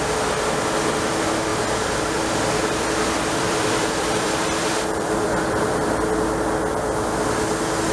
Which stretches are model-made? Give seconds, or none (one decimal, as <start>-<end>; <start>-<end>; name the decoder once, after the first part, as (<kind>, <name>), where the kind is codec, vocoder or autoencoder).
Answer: 1.5-6.1 (vocoder, BigVGAN v2)